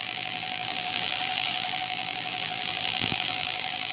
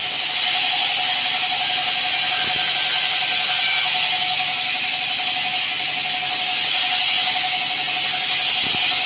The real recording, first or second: second